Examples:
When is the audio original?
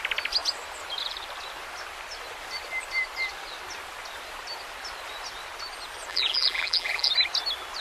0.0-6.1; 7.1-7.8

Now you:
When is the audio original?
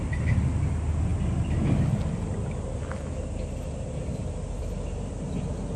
0.0-5.8